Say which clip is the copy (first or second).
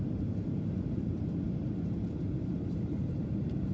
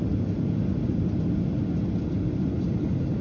first